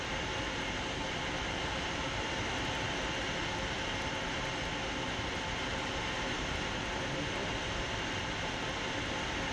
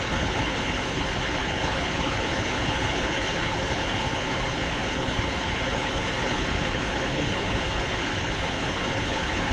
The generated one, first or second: second